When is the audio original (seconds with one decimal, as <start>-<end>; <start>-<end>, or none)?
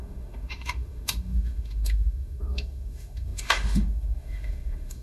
none